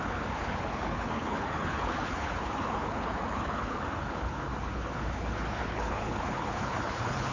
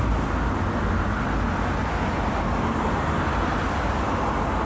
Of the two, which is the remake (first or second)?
first